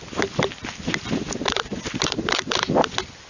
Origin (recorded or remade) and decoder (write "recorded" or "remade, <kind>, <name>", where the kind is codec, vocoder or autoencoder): recorded